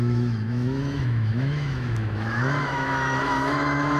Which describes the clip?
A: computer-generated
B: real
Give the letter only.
A